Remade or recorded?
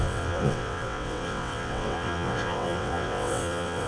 remade